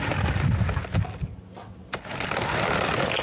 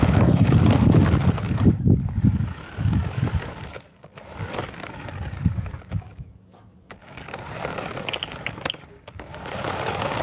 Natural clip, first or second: first